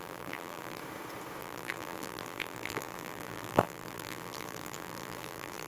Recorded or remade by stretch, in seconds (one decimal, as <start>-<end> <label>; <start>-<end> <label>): 0.0-0.8 remade; 0.8-1.4 recorded; 1.4-5.7 remade